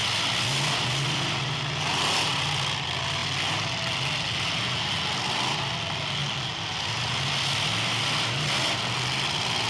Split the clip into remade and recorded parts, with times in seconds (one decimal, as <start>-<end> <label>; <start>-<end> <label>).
0.0-9.7 recorded